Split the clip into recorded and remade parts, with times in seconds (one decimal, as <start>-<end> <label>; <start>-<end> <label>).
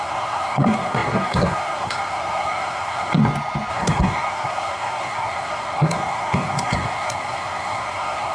0.0-3.2 remade; 3.2-3.7 recorded; 3.7-8.3 remade